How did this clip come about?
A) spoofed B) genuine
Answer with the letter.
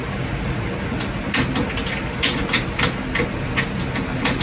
B